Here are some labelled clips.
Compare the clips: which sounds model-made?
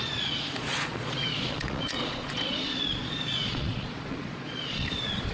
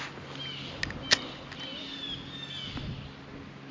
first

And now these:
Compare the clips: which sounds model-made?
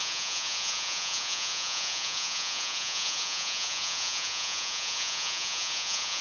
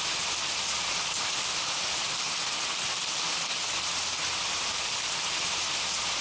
first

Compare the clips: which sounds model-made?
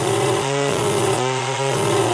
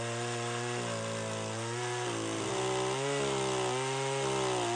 first